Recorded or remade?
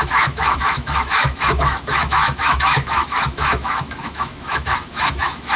remade